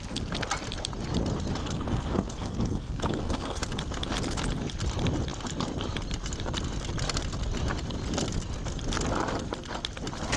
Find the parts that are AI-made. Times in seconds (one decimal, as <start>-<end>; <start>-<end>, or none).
1.6-3.6